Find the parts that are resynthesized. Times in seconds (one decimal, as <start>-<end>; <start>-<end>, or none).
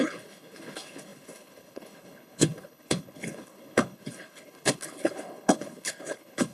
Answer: 0.0-6.5